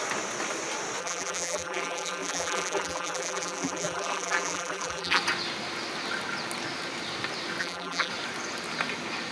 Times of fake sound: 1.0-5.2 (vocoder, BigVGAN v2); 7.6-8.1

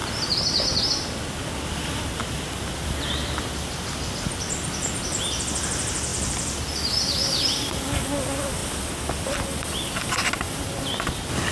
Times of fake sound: 0.0-0.6 (vocoder, BigVGAN v2); 6.1-7.8

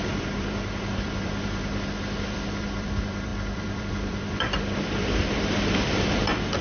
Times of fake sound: 0.0-6.6 (vocoder, BigVGAN v2)

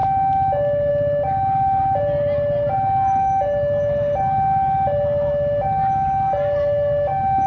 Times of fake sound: none

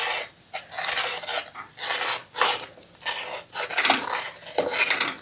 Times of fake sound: none